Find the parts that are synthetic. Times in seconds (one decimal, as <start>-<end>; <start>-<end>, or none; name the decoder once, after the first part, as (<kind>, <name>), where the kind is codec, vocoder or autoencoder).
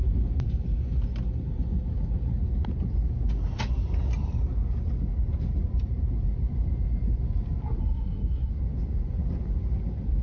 7.8-8.5 (codec, SNAC)